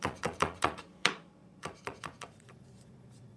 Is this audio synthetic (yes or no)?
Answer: yes